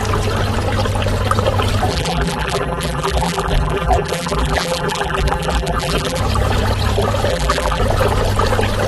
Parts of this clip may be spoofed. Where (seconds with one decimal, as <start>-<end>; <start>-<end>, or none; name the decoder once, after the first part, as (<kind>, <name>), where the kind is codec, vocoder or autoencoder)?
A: 1.9-6.2 (vocoder, BigVGAN v2); 7.3-7.8